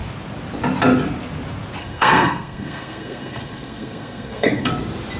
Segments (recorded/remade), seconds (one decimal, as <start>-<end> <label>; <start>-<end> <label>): 0.0-1.8 recorded; 1.8-4.7 remade; 4.7-5.2 recorded